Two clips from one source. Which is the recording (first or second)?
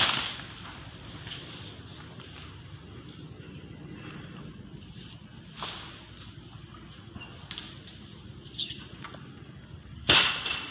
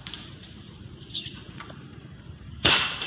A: first